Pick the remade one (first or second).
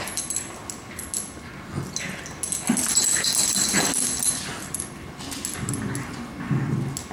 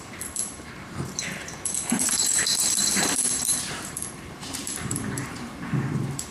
second